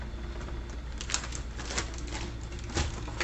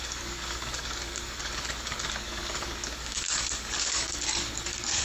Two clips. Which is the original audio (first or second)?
first